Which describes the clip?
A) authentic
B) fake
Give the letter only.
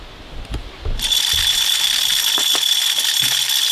A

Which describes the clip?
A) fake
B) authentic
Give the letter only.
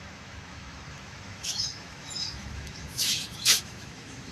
A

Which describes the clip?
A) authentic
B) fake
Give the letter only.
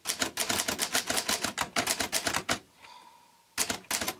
A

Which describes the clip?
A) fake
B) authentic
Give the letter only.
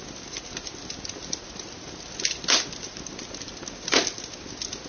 B